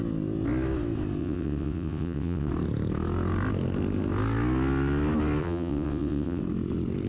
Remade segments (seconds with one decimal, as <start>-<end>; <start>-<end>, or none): 1.2-2.5; 5.4-6.4